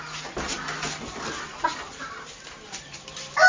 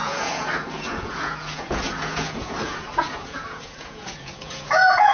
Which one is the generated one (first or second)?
second